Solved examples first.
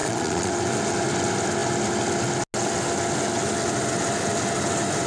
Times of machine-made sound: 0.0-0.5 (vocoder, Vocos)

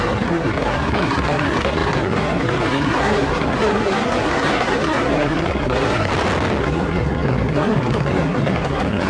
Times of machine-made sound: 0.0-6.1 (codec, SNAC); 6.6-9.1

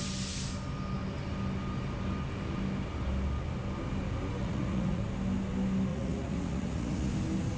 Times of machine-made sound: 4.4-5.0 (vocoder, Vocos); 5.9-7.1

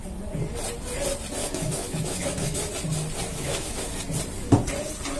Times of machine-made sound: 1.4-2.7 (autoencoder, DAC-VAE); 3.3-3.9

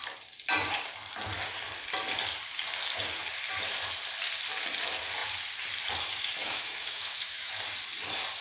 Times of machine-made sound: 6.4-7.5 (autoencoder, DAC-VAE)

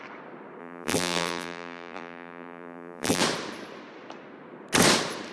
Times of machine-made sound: 0.6-3.2 (vocoder, BigVGAN v2)

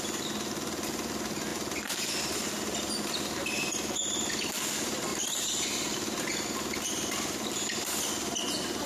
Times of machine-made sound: none

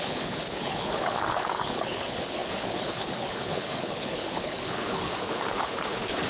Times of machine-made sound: 0.0-6.3 (codec, HILCodec)